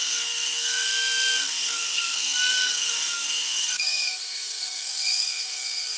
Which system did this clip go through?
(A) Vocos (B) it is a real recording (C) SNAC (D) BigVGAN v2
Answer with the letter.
C